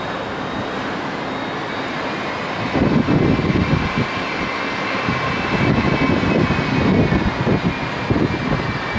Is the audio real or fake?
real